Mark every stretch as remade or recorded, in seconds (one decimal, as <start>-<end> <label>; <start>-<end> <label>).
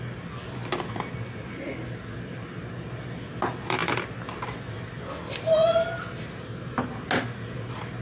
0.0-3.8 recorded; 3.8-6.3 remade; 6.3-8.0 recorded